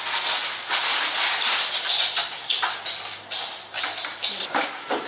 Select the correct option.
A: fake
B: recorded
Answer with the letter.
B